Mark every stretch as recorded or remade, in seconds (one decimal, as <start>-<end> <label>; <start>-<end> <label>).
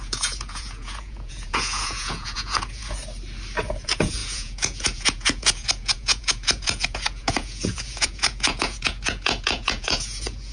0.0-3.0 remade; 3.0-3.6 recorded; 3.6-10.5 remade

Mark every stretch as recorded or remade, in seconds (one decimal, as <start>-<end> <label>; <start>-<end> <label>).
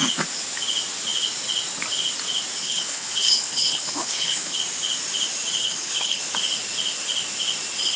0.0-2.6 recorded; 2.6-4.6 remade; 4.6-5.6 recorded; 5.6-6.2 remade; 6.2-8.0 recorded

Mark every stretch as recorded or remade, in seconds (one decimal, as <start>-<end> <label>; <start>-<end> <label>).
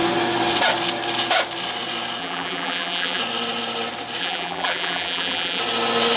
0.0-2.2 recorded; 2.2-3.2 remade; 3.2-4.2 recorded; 4.2-5.6 remade; 5.6-6.2 recorded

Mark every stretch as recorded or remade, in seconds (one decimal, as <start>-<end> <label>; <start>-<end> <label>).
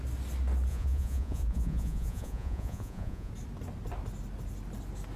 0.0-0.7 recorded; 0.7-3.3 remade; 3.3-5.2 recorded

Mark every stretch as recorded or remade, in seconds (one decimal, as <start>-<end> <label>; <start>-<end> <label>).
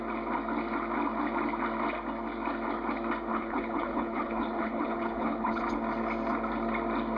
0.0-3.3 recorded; 3.3-5.6 remade; 5.6-7.2 recorded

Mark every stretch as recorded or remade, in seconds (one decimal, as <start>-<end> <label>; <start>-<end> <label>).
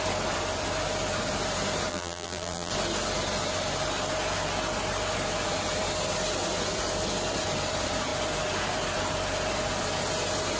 0.0-1.9 recorded; 1.9-2.7 remade; 2.7-10.6 recorded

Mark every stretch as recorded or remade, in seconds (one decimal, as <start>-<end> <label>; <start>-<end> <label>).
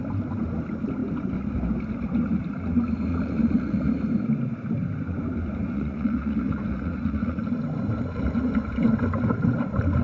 0.0-3.1 recorded; 3.1-3.9 remade; 3.9-5.6 recorded; 5.6-7.4 remade; 7.4-10.0 recorded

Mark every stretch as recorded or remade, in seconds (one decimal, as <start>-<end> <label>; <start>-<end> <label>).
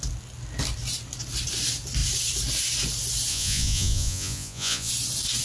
0.0-3.3 recorded; 3.3-4.9 remade; 4.9-5.4 recorded